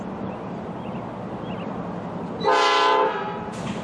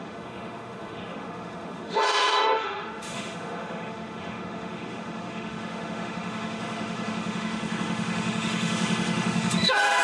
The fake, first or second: second